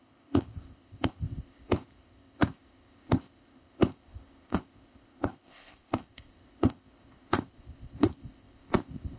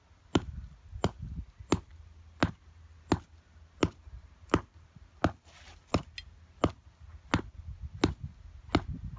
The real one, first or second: second